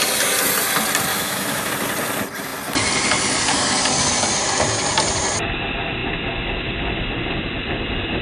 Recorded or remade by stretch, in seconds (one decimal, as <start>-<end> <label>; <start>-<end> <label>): 0.0-1.1 recorded; 1.1-1.7 remade; 1.7-8.2 recorded